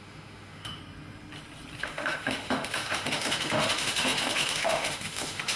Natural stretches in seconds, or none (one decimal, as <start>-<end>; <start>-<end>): 0.8-1.8